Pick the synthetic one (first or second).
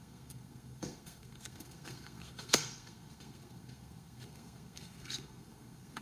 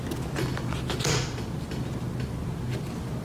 first